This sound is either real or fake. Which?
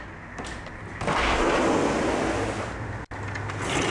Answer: real